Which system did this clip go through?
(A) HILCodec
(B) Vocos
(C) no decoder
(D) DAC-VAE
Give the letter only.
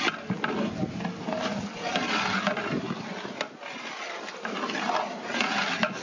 C